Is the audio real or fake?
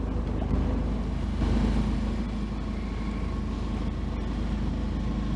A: real